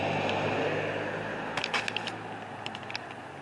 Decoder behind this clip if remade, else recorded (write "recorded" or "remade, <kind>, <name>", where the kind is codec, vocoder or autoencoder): recorded